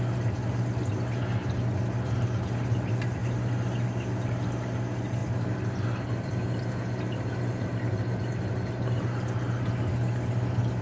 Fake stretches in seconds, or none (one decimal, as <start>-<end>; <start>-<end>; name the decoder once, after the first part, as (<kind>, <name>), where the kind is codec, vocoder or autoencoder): none